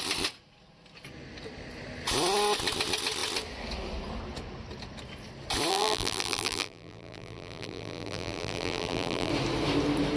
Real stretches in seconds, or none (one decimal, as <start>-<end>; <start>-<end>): 0.0-5.7; 9.3-10.2